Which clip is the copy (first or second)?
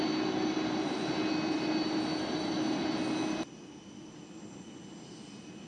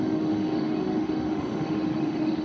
second